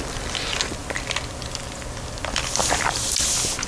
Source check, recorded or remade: recorded